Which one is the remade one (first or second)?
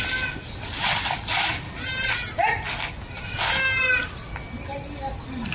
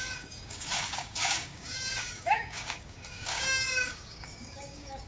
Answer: second